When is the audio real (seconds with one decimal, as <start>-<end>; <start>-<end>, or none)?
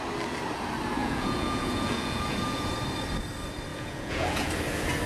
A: 0.0-1.0; 2.7-3.7; 4.5-5.1